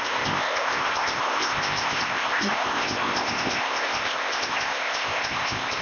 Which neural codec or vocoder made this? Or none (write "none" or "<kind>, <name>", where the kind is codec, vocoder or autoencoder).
codec, ZipCodec